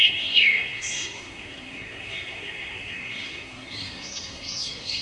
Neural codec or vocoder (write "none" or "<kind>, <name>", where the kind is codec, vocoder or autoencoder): codec, SNAC